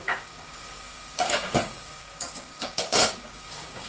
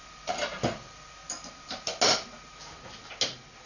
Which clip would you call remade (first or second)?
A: first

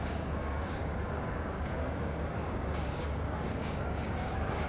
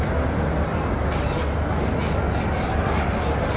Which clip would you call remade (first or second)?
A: first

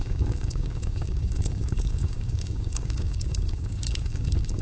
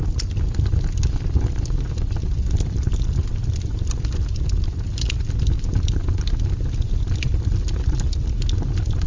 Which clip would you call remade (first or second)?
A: first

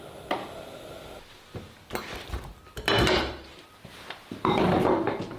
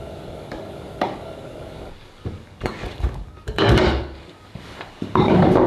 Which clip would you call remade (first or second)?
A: second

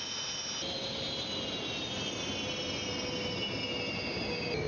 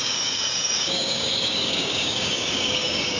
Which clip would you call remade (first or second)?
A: second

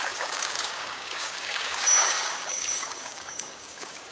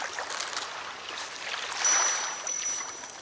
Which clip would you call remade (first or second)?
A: first